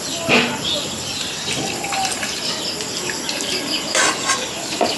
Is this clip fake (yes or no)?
no